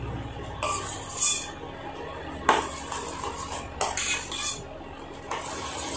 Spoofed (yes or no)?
no